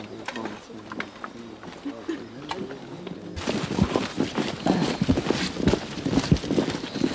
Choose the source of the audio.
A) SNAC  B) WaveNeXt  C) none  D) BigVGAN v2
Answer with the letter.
C